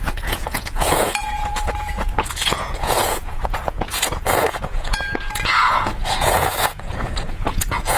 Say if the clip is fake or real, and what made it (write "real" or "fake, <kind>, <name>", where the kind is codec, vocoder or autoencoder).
fake, vocoder, Vocos